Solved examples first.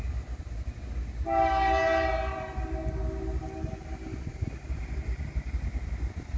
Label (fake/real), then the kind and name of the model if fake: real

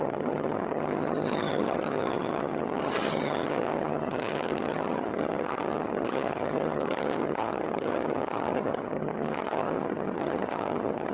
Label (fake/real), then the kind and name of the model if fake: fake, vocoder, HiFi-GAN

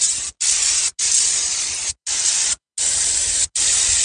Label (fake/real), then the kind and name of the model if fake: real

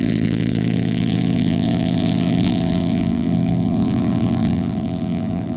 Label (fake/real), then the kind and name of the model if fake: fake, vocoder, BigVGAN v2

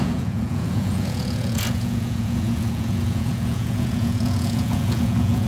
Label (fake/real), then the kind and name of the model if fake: fake, vocoder, Vocos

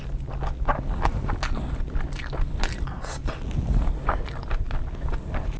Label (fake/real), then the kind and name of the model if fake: real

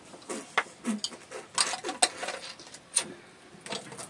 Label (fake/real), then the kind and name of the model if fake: real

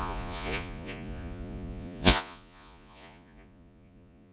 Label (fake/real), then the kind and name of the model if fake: fake, vocoder, Vocos